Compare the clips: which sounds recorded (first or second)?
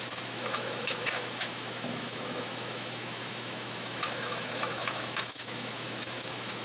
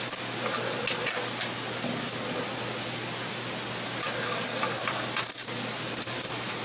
second